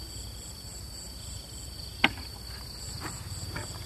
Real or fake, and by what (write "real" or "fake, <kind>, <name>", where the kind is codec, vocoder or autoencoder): real